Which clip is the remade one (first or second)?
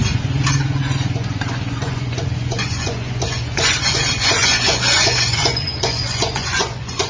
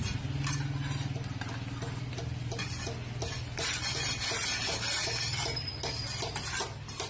first